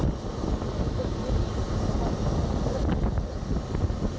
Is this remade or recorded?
recorded